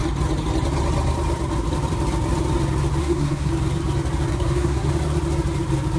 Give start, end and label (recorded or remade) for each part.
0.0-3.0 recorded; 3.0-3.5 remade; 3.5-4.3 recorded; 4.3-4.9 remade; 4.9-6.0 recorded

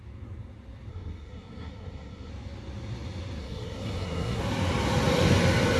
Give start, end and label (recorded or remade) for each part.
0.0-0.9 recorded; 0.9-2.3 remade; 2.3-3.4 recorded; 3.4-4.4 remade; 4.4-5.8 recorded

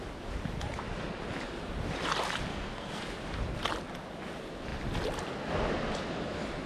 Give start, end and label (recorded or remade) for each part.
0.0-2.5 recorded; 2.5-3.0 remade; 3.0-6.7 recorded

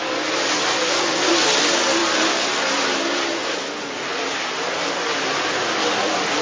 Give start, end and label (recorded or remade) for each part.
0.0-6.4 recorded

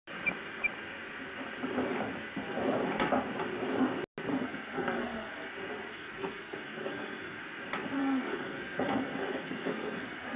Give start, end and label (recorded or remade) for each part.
0.0-4.3 recorded; 4.3-5.5 remade; 5.5-5.9 recorded; 5.9-7.4 remade; 7.4-8.0 recorded; 8.0-10.4 remade